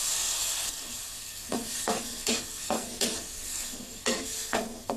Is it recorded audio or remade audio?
remade